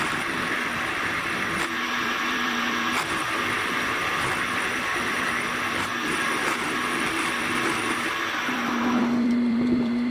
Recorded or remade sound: remade